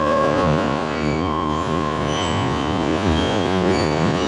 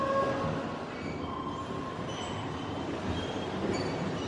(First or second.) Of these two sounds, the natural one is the second